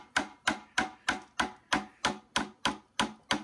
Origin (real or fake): real